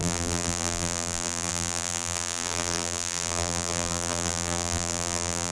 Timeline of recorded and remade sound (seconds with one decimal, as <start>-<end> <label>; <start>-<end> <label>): 0.0-5.5 remade